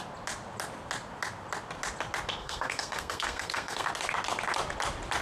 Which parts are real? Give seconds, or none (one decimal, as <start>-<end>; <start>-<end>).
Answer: 0.0-2.4; 3.9-5.2

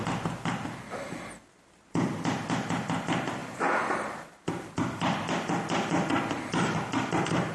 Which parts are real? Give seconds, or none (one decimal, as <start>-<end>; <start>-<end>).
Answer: 0.0-7.5

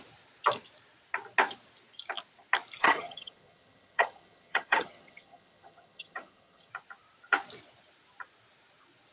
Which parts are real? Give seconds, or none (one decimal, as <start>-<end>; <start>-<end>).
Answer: 0.0-2.8; 6.7-9.1